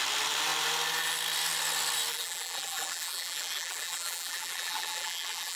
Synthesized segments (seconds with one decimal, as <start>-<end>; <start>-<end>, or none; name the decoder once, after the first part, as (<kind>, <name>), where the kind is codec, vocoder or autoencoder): 2.1-5.6 (vocoder, BigVGAN v2)